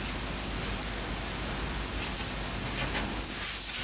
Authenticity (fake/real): real